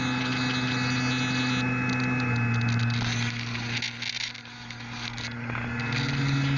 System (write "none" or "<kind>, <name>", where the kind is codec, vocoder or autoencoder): none